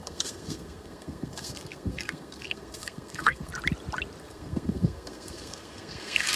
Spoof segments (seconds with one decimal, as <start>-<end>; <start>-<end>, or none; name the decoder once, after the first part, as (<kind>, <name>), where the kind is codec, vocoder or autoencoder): 0.0-3.5 (codec, SNAC); 4.2-6.4